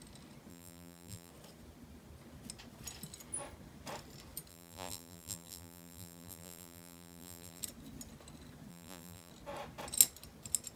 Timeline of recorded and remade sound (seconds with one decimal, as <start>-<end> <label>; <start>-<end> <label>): 0.0-0.5 recorded; 0.5-1.3 remade; 1.3-4.5 recorded; 4.5-7.6 remade; 7.6-8.7 recorded; 8.7-9.3 remade; 9.3-10.8 recorded